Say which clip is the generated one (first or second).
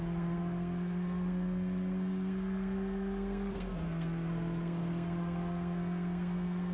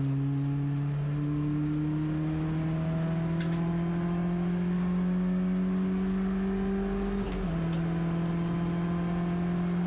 first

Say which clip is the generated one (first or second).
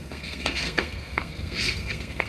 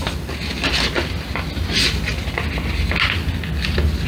first